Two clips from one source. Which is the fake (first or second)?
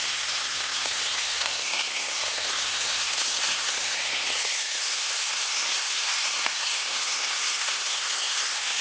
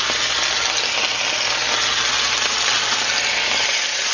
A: first